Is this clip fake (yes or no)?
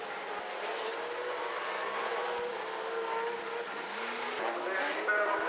no